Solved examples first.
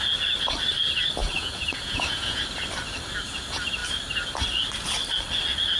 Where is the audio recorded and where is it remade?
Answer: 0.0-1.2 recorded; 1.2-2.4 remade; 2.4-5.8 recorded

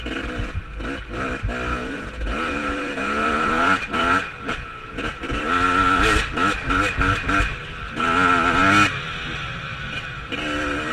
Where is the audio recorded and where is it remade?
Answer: 0.0-1.7 recorded; 1.7-5.4 remade; 5.4-10.9 recorded

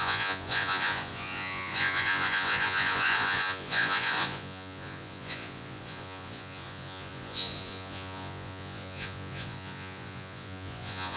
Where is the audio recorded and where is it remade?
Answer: 0.0-11.2 remade

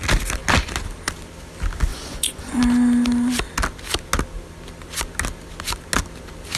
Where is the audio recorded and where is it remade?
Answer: 0.0-1.9 recorded; 1.9-2.6 remade; 2.6-6.6 recorded